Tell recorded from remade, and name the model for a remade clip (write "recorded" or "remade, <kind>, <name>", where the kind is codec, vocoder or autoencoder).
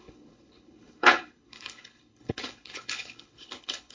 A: remade, codec, HILCodec